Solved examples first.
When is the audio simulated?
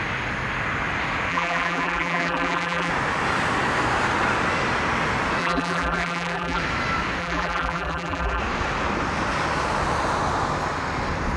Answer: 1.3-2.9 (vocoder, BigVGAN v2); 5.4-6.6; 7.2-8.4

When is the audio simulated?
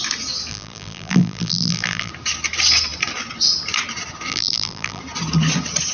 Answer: 0.5-2.1 (vocoder, BigVGAN v2); 4.3-5.0